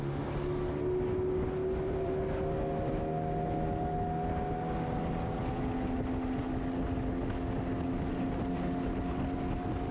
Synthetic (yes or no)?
no